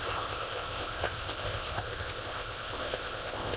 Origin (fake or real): fake